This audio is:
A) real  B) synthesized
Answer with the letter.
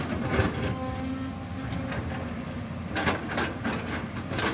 A